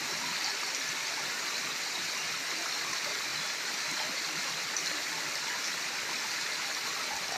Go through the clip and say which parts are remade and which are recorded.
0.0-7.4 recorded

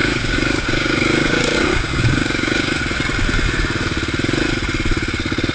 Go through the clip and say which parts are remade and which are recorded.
0.0-2.8 remade; 2.8-5.5 recorded